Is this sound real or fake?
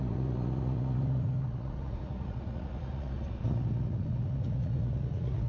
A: fake